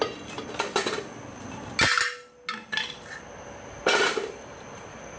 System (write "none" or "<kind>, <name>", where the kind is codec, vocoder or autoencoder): none